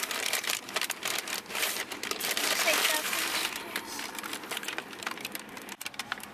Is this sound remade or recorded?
remade